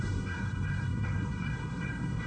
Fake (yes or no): yes